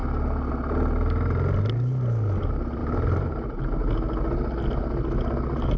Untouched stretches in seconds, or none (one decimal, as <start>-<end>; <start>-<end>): 0.0-2.8; 3.6-5.8